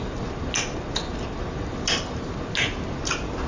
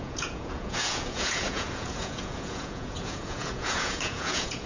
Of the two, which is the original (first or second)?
first